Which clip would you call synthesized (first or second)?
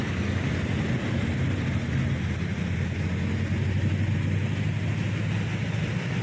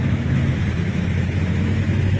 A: second